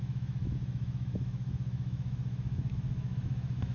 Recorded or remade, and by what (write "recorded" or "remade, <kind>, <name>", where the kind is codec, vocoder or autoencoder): remade, autoencoder, DAC-VAE